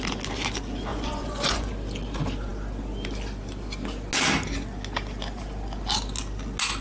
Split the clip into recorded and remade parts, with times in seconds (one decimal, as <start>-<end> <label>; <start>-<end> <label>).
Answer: 0.0-0.9 recorded; 0.9-1.7 remade; 1.7-6.8 recorded